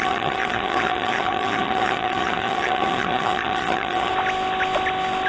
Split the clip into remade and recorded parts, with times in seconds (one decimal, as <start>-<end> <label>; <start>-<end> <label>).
0.0-4.1 remade; 4.1-5.3 recorded

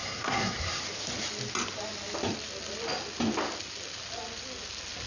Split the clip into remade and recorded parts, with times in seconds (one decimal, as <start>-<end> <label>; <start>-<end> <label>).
0.0-0.8 remade; 0.8-5.1 recorded

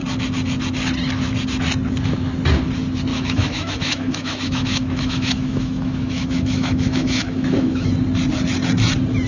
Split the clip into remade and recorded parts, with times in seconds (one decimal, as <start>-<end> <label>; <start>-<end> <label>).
0.0-3.1 recorded; 3.1-7.9 remade; 7.9-9.3 recorded

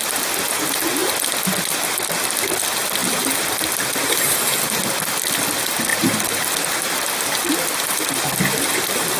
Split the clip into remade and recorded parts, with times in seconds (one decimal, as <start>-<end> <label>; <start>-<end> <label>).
0.0-9.2 recorded

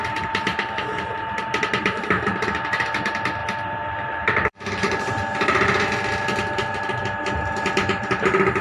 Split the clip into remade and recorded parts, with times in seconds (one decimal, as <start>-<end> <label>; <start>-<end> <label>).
0.0-0.5 recorded; 0.5-1.8 remade; 1.8-3.4 recorded; 3.4-4.9 remade; 4.9-8.6 recorded